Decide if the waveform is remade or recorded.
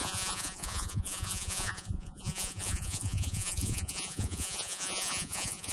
remade